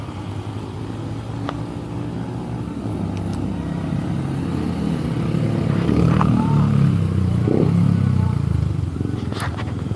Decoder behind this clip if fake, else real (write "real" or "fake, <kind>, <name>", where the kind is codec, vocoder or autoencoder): real